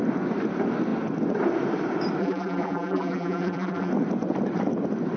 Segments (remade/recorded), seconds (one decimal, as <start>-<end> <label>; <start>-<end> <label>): 0.0-2.2 recorded; 2.2-3.9 remade; 3.9-5.2 recorded